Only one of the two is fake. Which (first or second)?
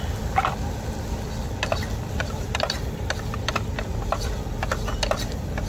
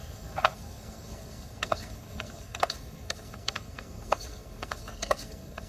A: second